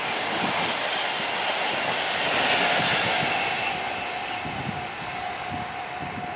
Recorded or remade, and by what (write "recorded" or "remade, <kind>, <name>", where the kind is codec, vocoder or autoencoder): recorded